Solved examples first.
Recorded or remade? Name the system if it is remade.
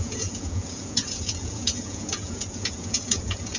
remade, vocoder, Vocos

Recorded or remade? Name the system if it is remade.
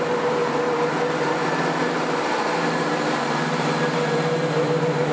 remade, vocoder, BigVGAN v2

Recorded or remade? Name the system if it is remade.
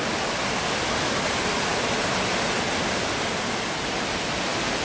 recorded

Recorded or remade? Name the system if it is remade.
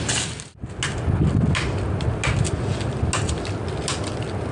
recorded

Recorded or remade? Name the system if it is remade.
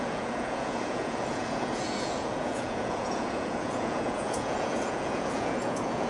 remade, vocoder, Vocos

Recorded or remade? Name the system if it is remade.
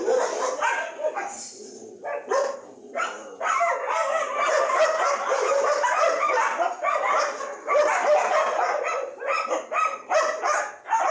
recorded